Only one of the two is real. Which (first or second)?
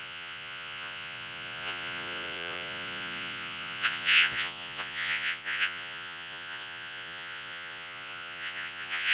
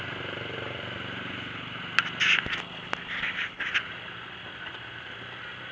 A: second